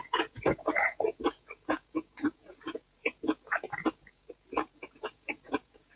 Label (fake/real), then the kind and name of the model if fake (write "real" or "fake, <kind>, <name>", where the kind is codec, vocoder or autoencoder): fake, vocoder, Vocos